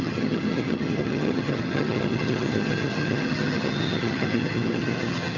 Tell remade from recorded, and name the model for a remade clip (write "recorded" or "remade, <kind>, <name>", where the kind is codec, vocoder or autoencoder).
remade, vocoder, HiFi-GAN